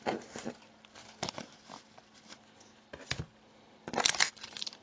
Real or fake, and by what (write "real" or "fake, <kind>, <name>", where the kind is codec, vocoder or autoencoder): real